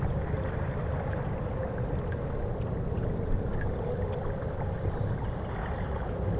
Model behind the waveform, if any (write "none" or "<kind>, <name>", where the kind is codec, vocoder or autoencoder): none